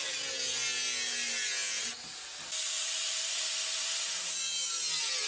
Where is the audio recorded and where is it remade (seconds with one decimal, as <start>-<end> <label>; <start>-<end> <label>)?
0.0-2.6 recorded; 2.6-4.2 remade; 4.2-5.3 recorded